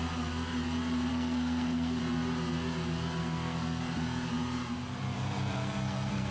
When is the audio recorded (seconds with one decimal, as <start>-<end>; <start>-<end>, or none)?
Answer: 0.0-1.1; 2.0-3.2; 3.8-5.6